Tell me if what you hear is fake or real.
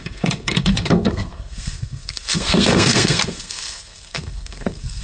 fake